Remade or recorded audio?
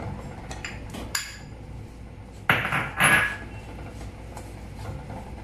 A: recorded